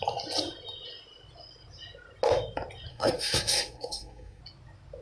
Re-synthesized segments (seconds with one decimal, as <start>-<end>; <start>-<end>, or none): 2.9-4.4